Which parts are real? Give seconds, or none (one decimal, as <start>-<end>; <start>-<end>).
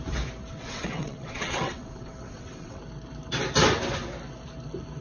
0.0-0.5; 2.8-5.0